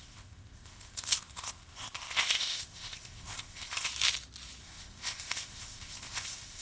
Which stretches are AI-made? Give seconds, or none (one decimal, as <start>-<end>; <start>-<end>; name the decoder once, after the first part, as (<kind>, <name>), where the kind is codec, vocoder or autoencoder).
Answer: 0.0-3.9 (codec, ZipCodec); 4.6-6.6

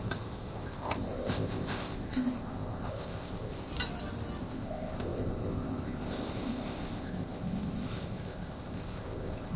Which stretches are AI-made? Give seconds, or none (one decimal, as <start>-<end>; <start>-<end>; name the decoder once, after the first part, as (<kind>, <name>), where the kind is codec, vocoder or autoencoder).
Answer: 0.0-3.7 (codec, ZipCodec); 4.4-9.6

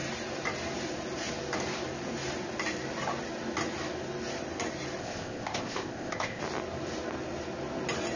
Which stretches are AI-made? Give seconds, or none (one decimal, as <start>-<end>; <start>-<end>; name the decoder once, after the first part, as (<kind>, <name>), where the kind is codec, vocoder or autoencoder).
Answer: 5.0-6.4 (codec, ZipCodec)

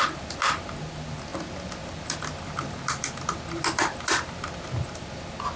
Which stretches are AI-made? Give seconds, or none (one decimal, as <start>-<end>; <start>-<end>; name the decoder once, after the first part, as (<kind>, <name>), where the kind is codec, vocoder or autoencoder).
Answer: none

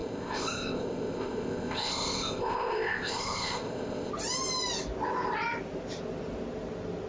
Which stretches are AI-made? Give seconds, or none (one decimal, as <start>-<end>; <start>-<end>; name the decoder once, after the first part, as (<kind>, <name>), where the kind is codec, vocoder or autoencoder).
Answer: 0.0-4.1 (codec, ZipCodec)

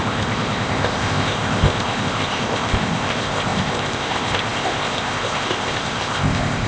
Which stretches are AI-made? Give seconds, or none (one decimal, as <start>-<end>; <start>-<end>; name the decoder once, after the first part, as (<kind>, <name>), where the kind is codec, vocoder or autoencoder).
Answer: 0.0-6.7 (codec, ZipCodec)